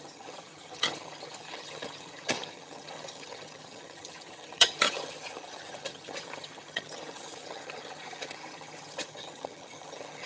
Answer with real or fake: fake